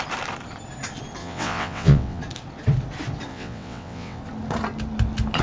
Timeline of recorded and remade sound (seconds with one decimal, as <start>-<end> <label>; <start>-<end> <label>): 0.0-1.2 recorded; 1.2-2.2 remade; 2.2-3.3 recorded; 3.3-4.2 remade; 4.2-5.4 recorded